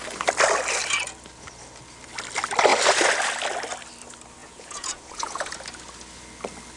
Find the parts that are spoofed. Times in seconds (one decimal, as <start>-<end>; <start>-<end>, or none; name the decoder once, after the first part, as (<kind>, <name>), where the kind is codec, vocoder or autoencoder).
4.4-5.5 (vocoder, Vocos)